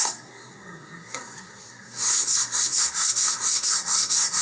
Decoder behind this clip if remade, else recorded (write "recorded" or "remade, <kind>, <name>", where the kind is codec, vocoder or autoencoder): remade, codec, SNAC